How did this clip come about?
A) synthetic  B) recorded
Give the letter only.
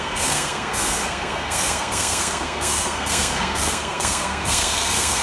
A